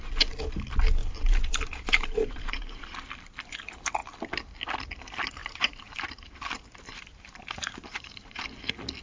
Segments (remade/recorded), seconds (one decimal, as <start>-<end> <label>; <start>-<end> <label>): 0.0-1.0 recorded; 1.0-2.8 remade; 2.8-5.4 recorded; 5.4-8.4 remade; 8.4-9.0 recorded

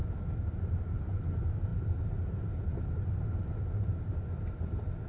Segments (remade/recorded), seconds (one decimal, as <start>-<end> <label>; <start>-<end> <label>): 0.0-5.1 recorded

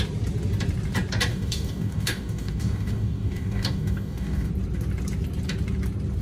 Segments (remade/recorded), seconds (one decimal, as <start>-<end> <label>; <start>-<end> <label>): 0.0-1.3 recorded; 1.3-4.5 remade; 4.5-6.2 recorded

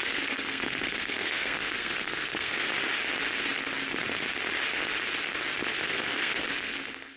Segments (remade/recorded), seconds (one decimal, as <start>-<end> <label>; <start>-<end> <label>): 0.0-2.5 remade; 2.5-5.7 recorded; 5.7-7.2 remade